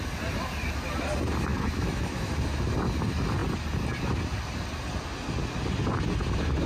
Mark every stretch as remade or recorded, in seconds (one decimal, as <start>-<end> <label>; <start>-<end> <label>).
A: 0.0-1.5 recorded; 1.5-2.3 remade; 2.3-6.7 recorded